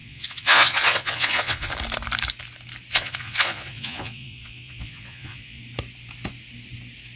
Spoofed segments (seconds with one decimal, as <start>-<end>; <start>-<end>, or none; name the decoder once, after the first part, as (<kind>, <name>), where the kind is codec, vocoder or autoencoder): 0.0-1.7 (vocoder, Vocos); 2.9-5.6